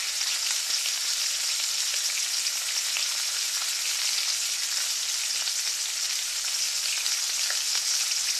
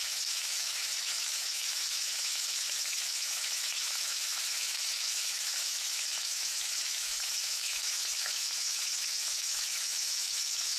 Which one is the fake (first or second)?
second